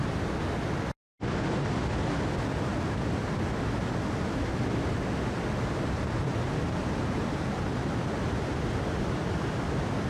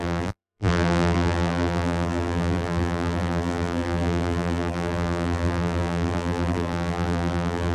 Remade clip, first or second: second